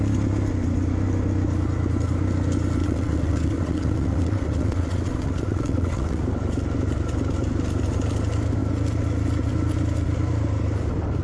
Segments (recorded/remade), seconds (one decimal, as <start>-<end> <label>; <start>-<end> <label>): 0.0-2.8 recorded; 2.8-6.2 remade; 6.2-11.2 recorded